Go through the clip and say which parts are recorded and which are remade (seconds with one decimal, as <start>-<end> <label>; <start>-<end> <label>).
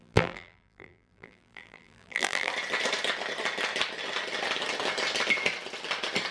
0.0-2.5 remade; 2.5-6.3 recorded